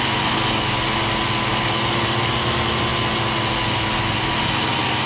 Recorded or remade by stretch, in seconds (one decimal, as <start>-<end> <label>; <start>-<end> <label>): 0.0-5.1 recorded